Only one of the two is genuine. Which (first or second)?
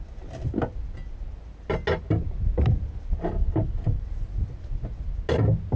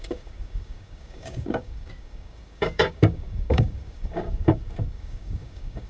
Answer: first